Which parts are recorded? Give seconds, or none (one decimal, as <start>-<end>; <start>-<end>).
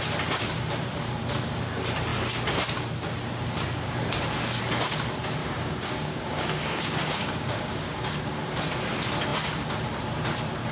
0.0-5.4; 8.4-10.7